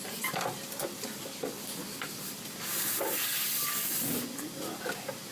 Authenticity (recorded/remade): recorded